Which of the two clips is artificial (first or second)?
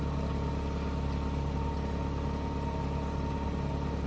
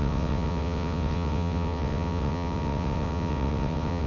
second